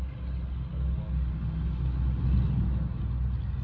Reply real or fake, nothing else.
real